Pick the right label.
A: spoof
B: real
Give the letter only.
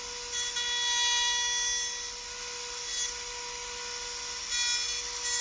B